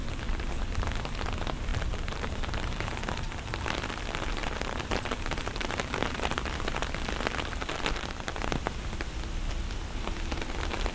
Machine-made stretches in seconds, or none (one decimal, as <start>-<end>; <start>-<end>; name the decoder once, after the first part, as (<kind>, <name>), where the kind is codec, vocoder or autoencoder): 0.0-0.6 (vocoder, BigVGAN v2); 1.7-3.0; 4.4-6.4; 7.6-8.4